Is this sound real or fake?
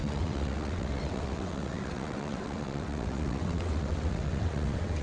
fake